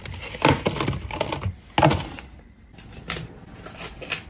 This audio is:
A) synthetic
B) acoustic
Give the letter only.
B